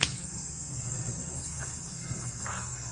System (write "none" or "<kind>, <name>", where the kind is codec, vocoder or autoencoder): codec, SNAC